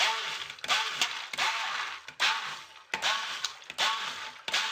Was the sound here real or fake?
real